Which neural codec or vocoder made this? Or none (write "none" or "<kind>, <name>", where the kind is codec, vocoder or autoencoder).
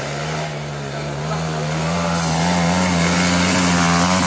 none